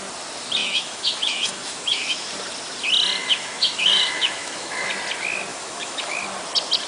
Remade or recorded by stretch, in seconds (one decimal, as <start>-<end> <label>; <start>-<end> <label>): 0.0-0.6 recorded; 0.6-2.3 remade; 2.3-3.2 recorded; 3.2-4.9 remade; 4.9-5.5 recorded; 5.5-6.2 remade; 6.2-6.9 recorded